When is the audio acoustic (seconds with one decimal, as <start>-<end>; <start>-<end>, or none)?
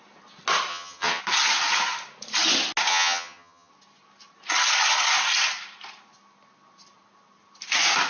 0.0-0.7; 1.2-2.9; 3.7-8.1